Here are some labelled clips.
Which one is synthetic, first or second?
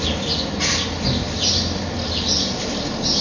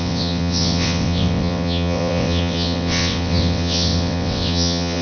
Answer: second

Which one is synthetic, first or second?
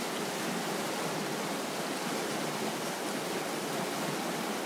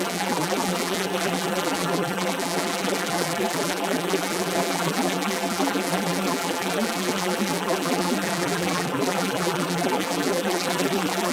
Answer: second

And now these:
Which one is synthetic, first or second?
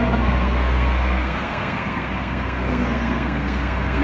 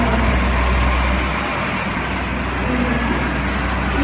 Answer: first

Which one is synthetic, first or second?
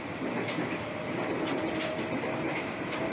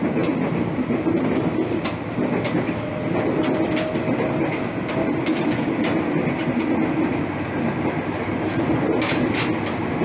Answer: first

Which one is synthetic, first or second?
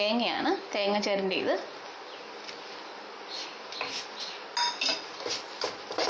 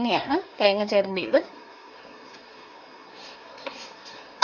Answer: second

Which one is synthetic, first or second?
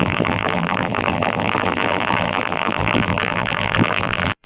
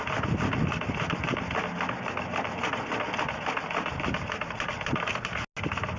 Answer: first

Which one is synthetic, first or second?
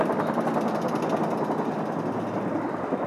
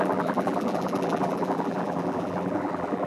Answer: second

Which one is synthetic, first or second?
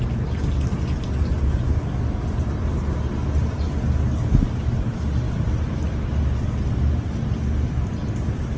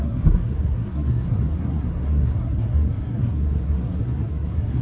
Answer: second